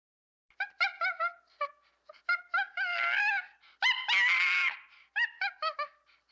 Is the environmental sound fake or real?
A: real